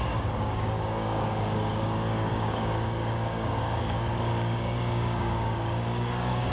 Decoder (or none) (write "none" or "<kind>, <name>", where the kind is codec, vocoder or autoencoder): codec, DAC